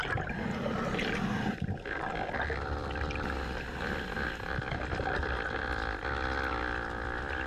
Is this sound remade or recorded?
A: recorded